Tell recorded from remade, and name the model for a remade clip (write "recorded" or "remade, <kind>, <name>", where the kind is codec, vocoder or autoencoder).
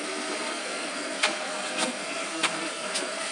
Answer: remade, codec, SNAC